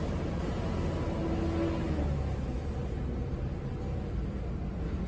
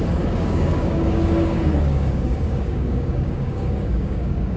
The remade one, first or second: second